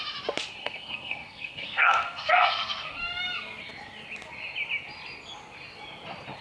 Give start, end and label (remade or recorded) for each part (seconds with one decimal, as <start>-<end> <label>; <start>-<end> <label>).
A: 0.0-0.6 recorded; 0.6-3.0 remade; 3.0-6.4 recorded